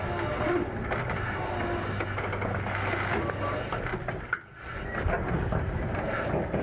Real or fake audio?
real